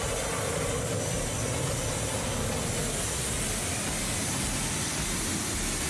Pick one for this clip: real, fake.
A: real